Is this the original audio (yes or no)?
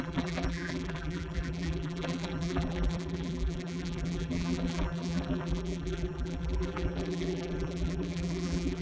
no